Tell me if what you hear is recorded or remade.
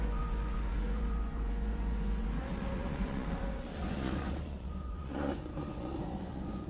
remade